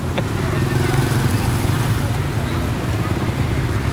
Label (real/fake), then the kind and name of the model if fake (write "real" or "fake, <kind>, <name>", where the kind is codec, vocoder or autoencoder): real